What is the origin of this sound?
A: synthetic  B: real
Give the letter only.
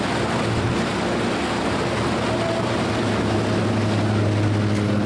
B